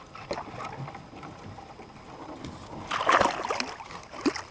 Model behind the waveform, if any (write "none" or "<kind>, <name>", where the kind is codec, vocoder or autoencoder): none